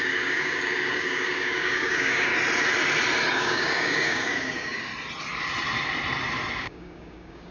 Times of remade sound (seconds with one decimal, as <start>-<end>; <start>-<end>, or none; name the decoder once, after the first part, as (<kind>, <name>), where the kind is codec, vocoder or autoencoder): 0.0-2.3 (codec, DAC); 3.3-4.9; 6.6-7.5